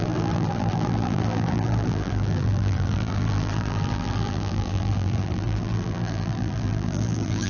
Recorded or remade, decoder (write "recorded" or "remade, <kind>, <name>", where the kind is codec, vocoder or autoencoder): remade, vocoder, BigVGAN v2